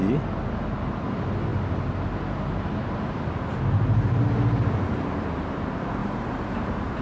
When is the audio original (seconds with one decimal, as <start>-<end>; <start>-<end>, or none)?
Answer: 0.0-6.0